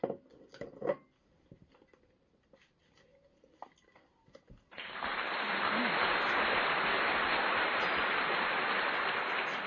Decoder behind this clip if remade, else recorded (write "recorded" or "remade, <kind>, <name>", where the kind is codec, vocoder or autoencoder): recorded